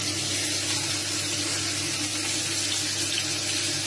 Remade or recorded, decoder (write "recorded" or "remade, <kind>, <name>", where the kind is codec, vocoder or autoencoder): recorded